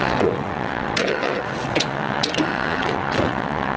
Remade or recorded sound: remade